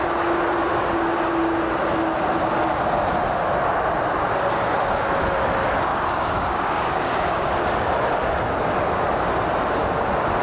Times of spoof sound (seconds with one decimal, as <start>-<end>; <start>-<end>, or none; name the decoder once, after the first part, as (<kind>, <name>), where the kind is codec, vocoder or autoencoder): 5.9-7.5 (codec, DAC)